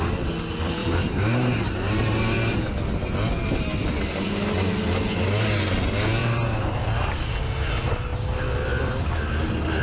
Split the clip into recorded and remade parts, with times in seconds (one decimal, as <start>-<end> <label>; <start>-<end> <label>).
0.0-0.8 recorded; 0.8-2.4 remade; 2.4-6.2 recorded; 6.2-6.8 remade; 6.8-9.8 recorded

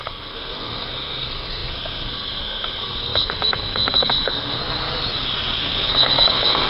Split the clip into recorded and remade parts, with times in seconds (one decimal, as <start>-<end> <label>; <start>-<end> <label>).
0.0-4.6 remade; 4.6-5.6 recorded; 5.6-6.7 remade

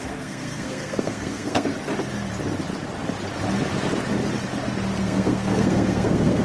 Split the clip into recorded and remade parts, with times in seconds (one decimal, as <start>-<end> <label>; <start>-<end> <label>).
0.0-1.7 remade; 1.7-5.0 recorded; 5.0-6.4 remade

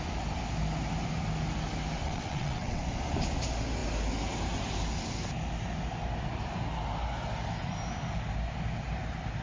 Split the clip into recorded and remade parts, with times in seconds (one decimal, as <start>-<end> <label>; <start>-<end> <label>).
0.0-2.0 recorded; 2.0-2.8 remade; 2.8-9.4 recorded

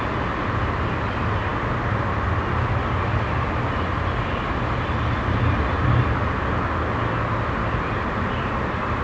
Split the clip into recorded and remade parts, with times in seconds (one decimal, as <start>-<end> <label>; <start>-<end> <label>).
0.0-1.5 recorded; 1.5-3.6 remade; 3.6-9.0 recorded